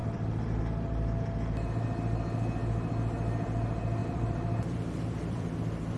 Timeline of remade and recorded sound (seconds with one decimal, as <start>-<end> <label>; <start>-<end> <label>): 0.0-0.6 remade; 0.6-4.0 recorded; 4.0-6.0 remade